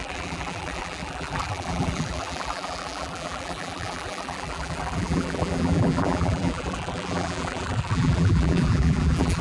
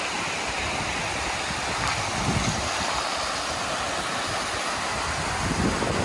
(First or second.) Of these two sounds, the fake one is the first